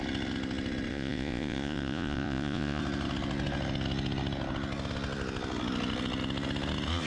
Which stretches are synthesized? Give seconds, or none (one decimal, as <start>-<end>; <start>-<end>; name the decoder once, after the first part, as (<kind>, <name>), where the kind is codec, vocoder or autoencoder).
0.9-2.8 (vocoder, Vocos)